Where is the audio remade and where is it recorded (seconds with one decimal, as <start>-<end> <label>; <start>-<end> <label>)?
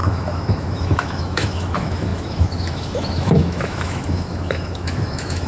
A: 0.0-5.5 remade